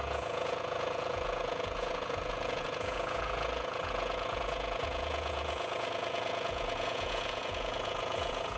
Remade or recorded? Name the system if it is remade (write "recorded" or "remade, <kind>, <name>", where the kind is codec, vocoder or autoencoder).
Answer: remade, vocoder, Vocos